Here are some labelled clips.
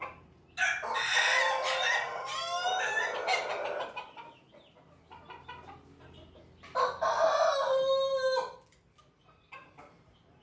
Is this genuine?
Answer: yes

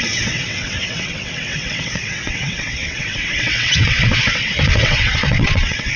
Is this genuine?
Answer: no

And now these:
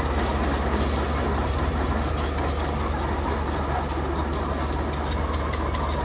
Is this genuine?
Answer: yes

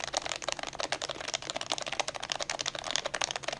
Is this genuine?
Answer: yes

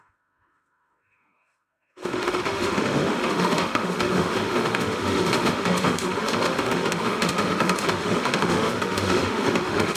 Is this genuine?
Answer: no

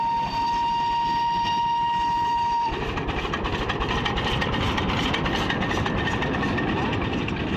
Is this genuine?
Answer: yes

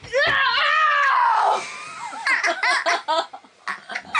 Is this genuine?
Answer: yes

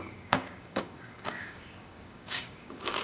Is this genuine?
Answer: no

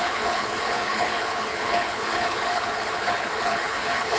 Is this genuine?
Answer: no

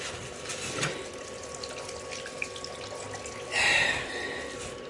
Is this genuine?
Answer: yes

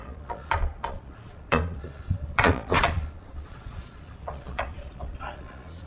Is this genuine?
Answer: no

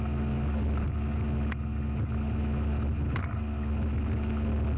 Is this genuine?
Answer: yes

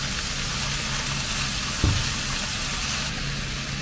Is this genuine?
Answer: yes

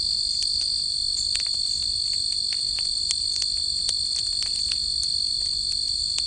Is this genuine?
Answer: yes